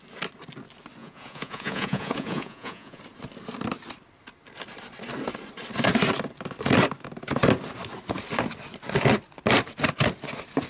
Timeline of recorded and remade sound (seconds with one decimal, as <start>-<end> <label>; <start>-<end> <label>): 0.0-1.0 recorded; 1.0-3.0 remade; 3.0-10.7 recorded